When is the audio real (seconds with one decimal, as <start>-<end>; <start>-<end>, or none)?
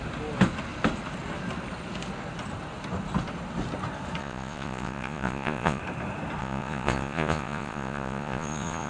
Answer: 0.0-4.2; 5.8-6.4